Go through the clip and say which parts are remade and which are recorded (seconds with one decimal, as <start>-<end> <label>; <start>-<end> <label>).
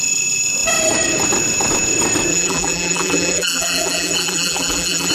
0.0-2.3 recorded; 2.3-5.1 remade